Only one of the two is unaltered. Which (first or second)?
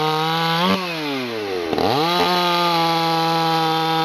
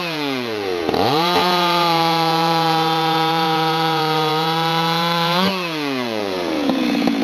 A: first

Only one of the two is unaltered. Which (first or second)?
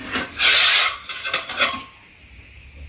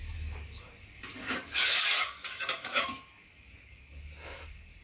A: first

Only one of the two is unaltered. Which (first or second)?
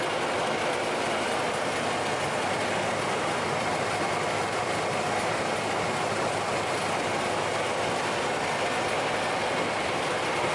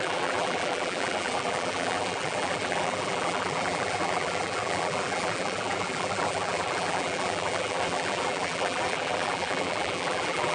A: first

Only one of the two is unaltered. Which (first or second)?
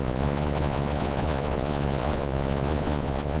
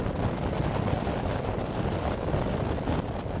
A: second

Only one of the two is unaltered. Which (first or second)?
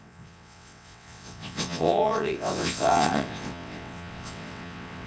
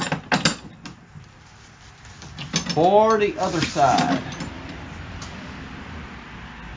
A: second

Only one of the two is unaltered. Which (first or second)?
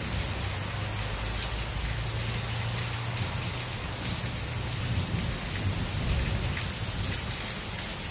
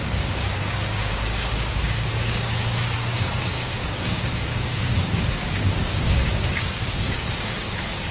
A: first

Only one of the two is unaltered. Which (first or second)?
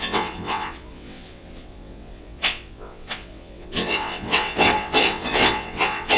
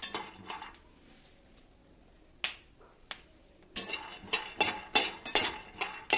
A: second